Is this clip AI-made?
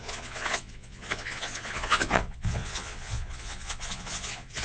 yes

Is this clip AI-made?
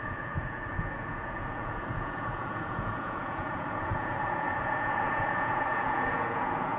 yes